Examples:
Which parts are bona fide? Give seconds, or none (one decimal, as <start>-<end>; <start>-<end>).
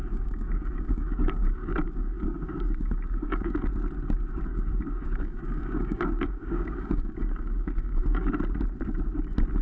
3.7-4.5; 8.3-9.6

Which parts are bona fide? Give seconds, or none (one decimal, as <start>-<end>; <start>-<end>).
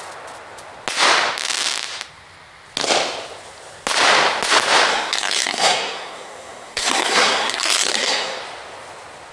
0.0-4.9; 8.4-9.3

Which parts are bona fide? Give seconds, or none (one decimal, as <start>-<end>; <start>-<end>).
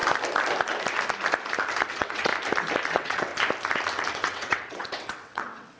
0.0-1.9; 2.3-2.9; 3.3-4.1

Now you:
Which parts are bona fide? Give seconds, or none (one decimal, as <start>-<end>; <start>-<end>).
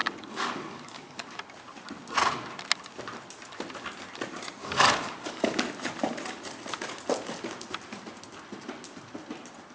1.4-4.6; 5.6-9.7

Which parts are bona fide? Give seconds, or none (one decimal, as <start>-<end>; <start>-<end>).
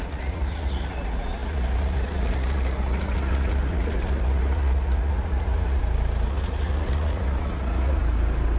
5.8-6.3; 8.0-8.6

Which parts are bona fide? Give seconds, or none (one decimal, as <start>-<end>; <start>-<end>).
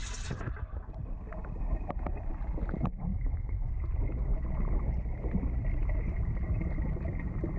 0.0-3.1; 3.7-7.6